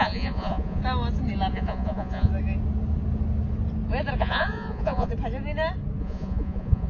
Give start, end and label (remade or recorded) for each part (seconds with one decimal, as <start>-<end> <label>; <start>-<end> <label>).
0.0-0.8 remade; 0.8-1.5 recorded; 1.5-2.3 remade; 2.3-4.2 recorded; 4.2-5.1 remade; 5.1-6.0 recorded; 6.0-6.9 remade